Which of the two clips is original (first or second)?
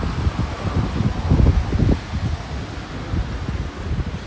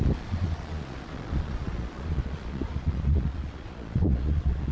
first